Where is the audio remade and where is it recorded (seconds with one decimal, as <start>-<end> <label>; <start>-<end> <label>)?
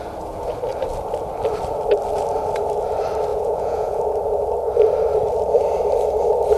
0.0-3.3 recorded; 3.3-4.0 remade; 4.0-6.6 recorded